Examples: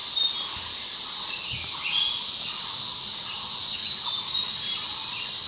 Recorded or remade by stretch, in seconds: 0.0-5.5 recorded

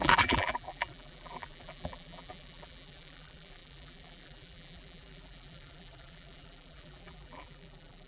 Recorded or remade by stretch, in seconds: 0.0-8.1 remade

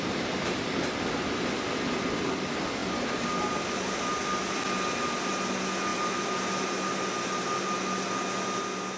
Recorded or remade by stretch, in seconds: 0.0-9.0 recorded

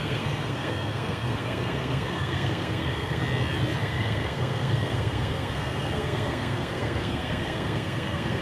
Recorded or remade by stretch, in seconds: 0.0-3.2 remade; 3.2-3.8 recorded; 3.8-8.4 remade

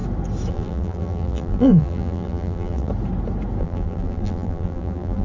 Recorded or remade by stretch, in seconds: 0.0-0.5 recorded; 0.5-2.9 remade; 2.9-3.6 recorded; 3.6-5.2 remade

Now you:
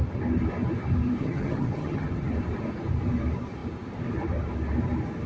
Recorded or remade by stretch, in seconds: 0.0-1.2 recorded; 1.2-2.3 remade; 2.3-5.3 recorded

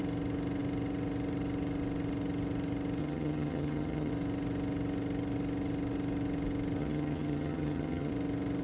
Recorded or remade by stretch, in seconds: 0.0-3.0 recorded; 3.0-4.1 remade; 4.1-6.8 recorded; 6.8-8.1 remade; 8.1-8.6 recorded